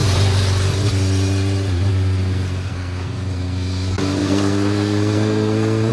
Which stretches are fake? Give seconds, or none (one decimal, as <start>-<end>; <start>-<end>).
1.9-5.9